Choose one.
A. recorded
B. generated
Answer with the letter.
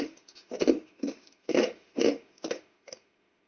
B